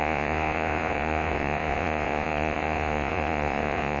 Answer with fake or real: fake